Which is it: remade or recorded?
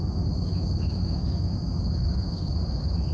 remade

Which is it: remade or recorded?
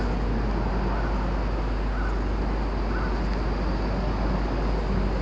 recorded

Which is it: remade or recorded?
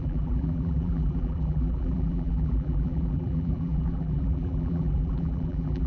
remade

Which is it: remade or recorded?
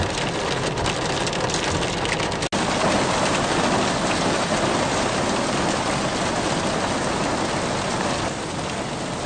recorded